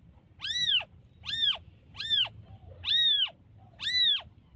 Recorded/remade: recorded